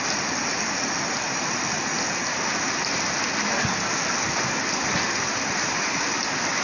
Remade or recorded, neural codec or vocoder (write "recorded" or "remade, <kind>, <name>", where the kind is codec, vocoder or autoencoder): recorded